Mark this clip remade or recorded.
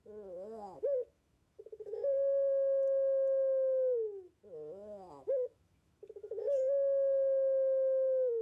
remade